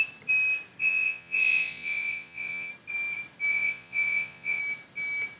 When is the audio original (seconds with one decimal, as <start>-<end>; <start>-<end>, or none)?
0.0-0.8; 2.7-3.5; 4.6-5.4